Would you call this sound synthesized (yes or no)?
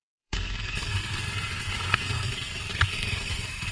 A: yes